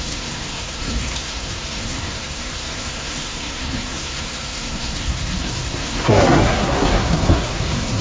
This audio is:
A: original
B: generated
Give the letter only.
B